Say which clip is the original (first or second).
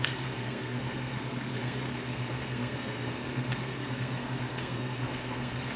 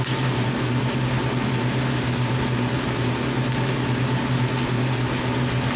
second